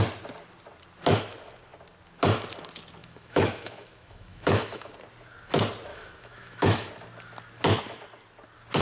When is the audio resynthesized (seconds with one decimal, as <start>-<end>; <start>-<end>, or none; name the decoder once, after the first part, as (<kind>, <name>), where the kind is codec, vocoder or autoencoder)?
3.0-4.9 (autoencoder, DAC-VAE); 5.9-6.9